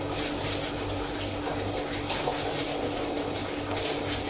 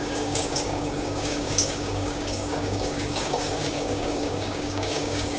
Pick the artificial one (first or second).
second